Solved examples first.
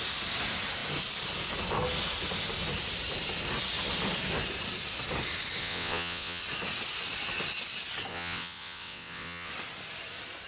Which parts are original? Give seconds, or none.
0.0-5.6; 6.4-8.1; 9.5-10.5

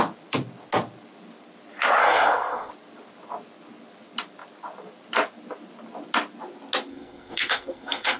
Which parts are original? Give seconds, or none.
0.0-2.0; 2.7-6.9

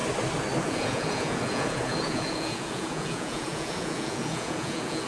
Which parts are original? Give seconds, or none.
0.0-0.6

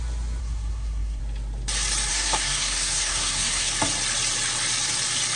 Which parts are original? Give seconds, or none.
0.0-0.4; 1.2-2.1; 3.7-5.4

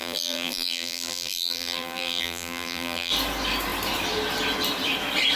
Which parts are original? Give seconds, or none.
3.1-5.4